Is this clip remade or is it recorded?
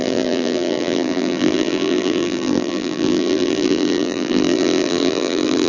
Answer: remade